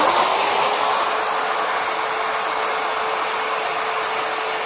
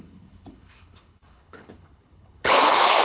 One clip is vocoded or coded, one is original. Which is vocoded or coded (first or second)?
second